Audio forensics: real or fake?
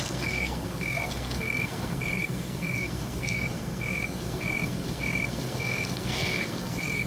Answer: fake